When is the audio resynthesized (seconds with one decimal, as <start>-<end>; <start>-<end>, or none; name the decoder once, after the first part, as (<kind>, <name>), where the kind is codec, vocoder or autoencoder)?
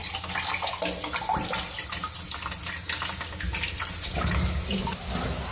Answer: none